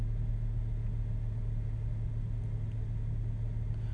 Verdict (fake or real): real